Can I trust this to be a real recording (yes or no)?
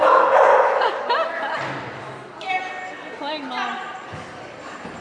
yes